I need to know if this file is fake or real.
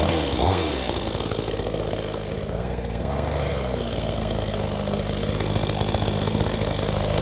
fake